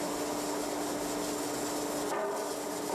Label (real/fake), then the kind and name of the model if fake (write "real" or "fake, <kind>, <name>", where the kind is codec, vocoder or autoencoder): real